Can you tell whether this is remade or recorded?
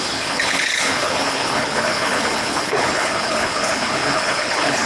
remade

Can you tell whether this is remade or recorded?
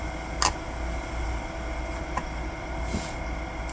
recorded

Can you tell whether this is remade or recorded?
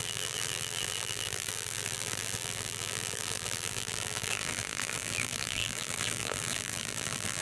remade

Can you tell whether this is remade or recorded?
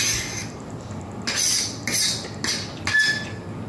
recorded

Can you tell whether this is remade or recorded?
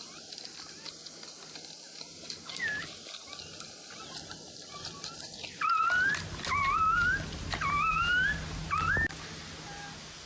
recorded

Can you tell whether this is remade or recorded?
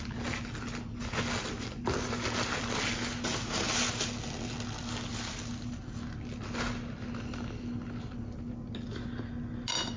recorded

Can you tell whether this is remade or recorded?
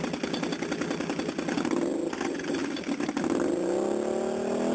recorded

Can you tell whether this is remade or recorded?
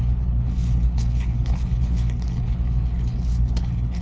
remade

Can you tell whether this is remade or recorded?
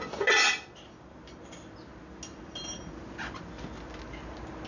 recorded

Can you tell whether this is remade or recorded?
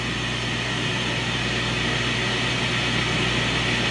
recorded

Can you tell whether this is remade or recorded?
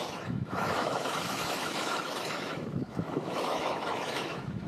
remade